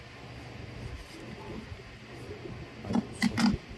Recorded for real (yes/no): yes